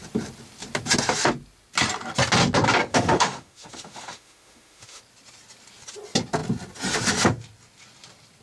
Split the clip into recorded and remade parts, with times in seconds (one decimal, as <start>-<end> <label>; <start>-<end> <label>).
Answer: 0.0-2.9 recorded; 2.9-5.0 remade; 5.0-8.4 recorded